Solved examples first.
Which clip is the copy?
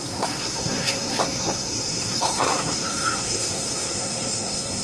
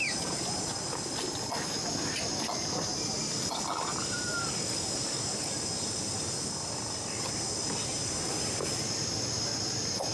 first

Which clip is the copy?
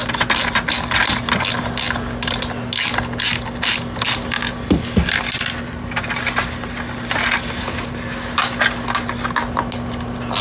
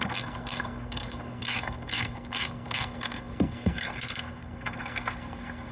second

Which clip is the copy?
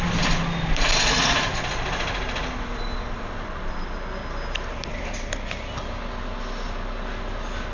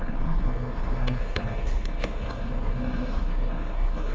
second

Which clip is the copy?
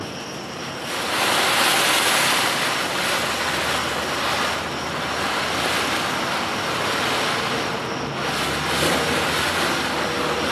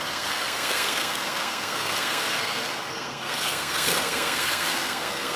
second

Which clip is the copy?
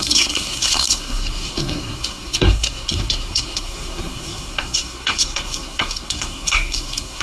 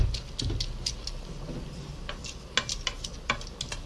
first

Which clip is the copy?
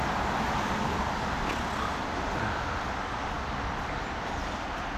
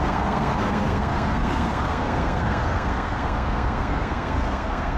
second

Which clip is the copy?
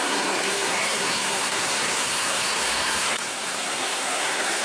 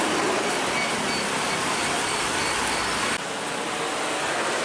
first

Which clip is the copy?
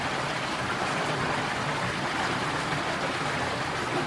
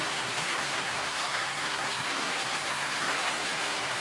second